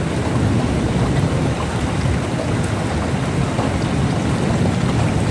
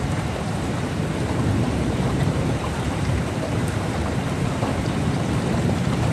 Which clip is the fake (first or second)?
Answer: second